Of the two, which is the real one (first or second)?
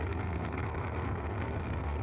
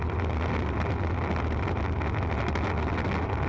second